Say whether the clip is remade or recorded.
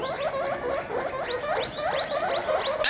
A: recorded